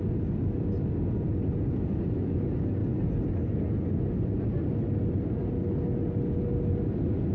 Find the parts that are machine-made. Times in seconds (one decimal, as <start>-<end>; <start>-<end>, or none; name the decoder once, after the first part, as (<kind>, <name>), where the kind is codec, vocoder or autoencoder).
none